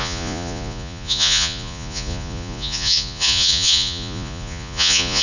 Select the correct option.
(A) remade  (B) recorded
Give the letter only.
A